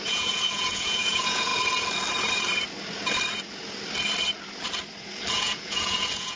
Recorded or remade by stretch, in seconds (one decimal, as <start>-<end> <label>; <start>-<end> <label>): 0.0-1.5 remade; 1.5-5.3 recorded; 5.3-6.4 remade